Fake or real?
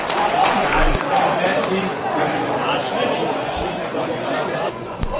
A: fake